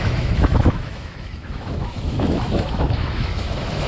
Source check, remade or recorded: remade